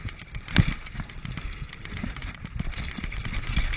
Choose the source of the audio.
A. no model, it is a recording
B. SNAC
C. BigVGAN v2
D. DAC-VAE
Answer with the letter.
A